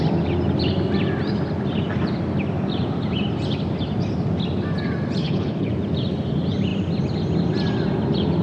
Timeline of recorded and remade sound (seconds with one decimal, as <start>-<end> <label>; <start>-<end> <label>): 0.0-5.2 recorded; 5.2-5.7 remade; 5.7-8.4 recorded